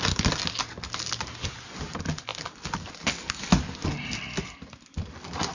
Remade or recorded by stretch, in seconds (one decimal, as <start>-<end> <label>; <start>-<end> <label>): 0.0-5.5 recorded